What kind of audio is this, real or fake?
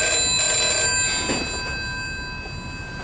real